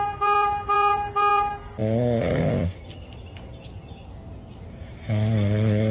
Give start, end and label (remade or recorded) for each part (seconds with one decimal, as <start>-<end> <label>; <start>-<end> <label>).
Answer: 0.0-5.9 recorded